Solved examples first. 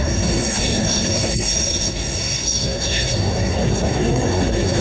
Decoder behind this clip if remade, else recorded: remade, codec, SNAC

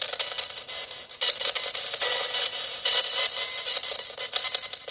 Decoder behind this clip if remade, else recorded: recorded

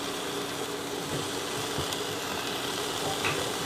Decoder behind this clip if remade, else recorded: recorded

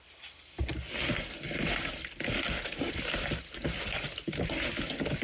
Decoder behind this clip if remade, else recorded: recorded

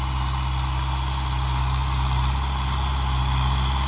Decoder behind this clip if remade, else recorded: recorded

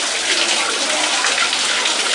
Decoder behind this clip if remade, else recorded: recorded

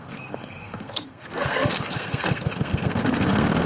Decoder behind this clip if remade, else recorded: remade, codec, SNAC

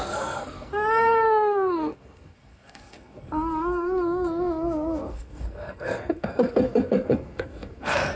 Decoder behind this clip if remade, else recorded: remade, codec, SNAC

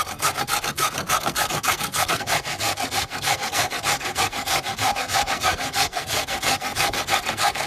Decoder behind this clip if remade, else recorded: remade, codec, SNAC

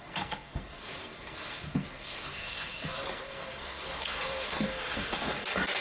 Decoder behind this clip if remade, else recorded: remade, codec, SNAC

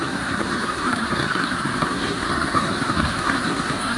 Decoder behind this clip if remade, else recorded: remade, codec, SNAC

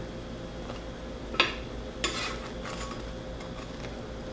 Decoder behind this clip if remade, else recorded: recorded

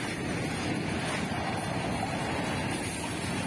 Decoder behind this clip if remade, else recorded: recorded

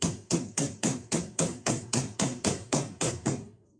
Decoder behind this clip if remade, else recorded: remade, codec, SNAC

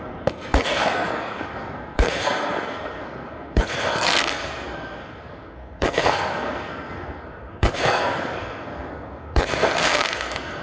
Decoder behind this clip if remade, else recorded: remade, codec, SNAC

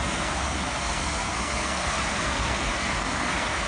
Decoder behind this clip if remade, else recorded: remade, codec, SNAC